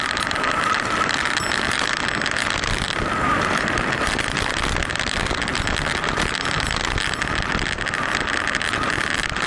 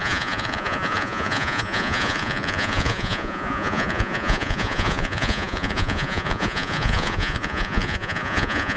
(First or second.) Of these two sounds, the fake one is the second